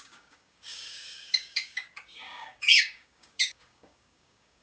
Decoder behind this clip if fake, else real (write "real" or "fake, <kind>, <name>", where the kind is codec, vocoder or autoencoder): fake, codec, DAC